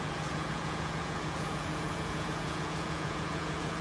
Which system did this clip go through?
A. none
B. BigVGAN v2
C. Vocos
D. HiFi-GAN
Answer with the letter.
C